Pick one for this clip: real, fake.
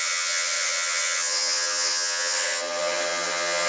fake